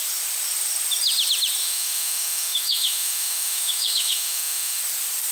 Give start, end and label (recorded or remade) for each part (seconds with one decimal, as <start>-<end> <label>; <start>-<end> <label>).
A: 0.0-1.6 recorded; 1.6-4.8 remade; 4.8-5.3 recorded